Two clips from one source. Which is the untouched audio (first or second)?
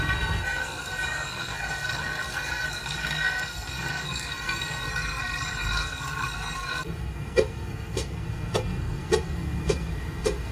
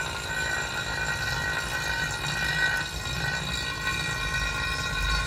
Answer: second